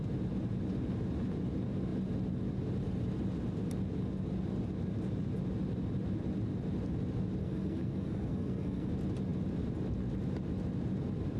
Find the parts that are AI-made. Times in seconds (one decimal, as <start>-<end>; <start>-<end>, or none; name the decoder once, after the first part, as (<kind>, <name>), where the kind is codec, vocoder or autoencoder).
7.4-8.9 (codec, SNAC)